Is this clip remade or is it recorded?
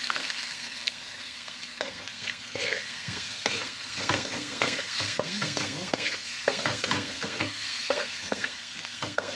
remade